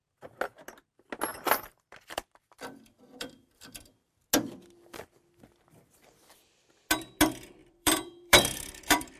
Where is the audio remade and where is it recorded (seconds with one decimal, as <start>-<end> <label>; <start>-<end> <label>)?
0.0-1.3 recorded; 1.3-4.2 remade; 4.2-7.6 recorded; 7.6-9.2 remade